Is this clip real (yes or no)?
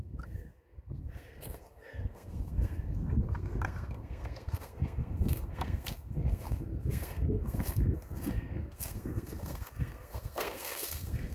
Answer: no